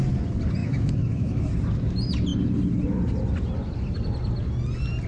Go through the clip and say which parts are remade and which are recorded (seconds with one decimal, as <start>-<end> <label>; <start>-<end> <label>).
0.0-0.6 recorded; 0.6-1.4 remade; 1.4-5.1 recorded